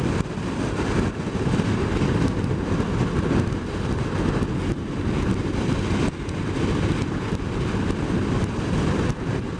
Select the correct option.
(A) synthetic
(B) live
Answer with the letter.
B